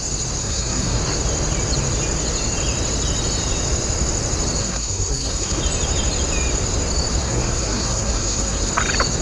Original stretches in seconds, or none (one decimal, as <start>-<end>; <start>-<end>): 0.0-0.4; 1.0-4.6; 5.6-7.2; 8.7-9.2